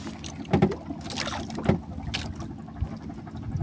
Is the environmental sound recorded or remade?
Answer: recorded